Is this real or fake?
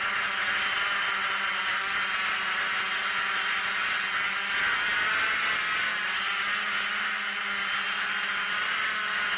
real